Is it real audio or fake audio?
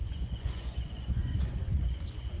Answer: fake